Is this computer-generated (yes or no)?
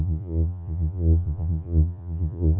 yes